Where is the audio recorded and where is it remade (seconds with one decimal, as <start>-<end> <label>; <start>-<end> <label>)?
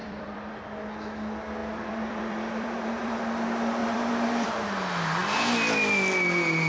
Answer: 0.0-0.6 remade; 0.6-1.6 recorded; 1.6-3.2 remade; 3.2-3.8 recorded; 3.8-4.5 remade; 4.5-6.7 recorded